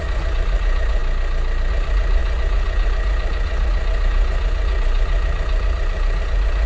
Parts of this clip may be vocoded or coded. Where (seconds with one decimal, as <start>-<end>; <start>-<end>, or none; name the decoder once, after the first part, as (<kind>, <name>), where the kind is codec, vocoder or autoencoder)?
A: 0.0-1.0 (vocoder, Vocos); 1.7-6.7